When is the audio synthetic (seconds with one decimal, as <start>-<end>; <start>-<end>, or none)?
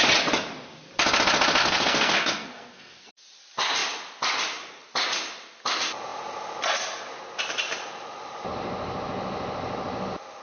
1.6-3.1